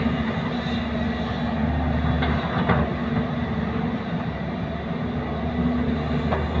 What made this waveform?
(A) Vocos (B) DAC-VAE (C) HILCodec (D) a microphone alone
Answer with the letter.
D